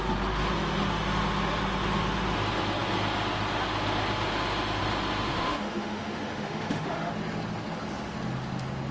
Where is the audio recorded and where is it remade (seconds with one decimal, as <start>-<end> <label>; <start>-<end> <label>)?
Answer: 0.0-5.3 recorded; 5.3-7.1 remade; 7.1-8.9 recorded